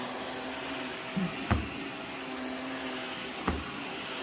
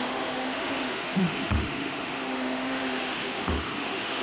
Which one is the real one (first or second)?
first